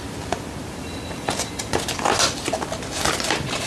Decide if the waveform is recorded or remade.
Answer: remade